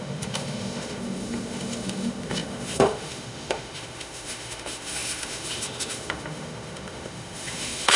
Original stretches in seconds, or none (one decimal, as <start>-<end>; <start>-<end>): none